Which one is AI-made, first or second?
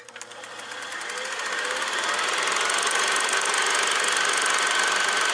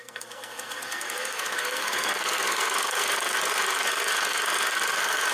second